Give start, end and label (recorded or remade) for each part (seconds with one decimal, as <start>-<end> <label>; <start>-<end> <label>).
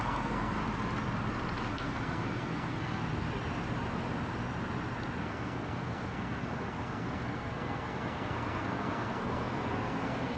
0.0-0.6 remade; 0.6-1.7 recorded; 1.7-3.0 remade; 3.0-5.2 recorded; 5.2-10.4 remade